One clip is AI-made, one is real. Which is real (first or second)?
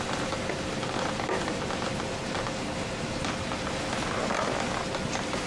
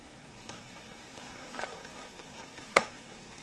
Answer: first